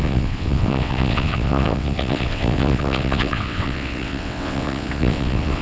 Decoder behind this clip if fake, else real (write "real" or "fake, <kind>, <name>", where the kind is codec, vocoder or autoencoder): fake, vocoder, WaveNeXt